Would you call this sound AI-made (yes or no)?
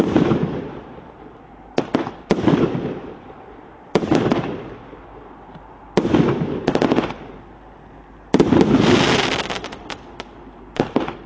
no